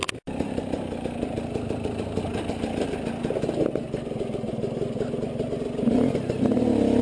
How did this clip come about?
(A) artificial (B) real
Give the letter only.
B